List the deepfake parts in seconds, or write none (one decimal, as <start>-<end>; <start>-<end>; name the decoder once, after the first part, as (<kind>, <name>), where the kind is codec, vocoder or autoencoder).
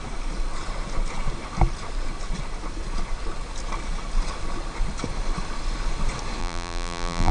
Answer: 6.4-7.3 (vocoder, BigVGAN v2)